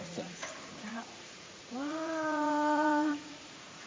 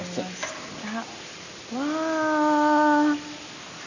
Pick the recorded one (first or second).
second